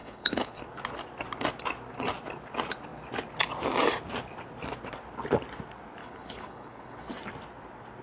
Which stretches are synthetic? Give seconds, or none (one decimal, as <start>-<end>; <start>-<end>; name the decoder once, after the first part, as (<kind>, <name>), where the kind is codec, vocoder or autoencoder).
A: 0.0-0.6 (codec, HILCodec); 6.0-7.1